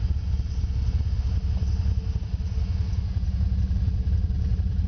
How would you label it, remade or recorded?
recorded